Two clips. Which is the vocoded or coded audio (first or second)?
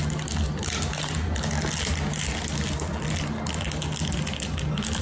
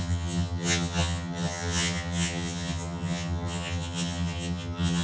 second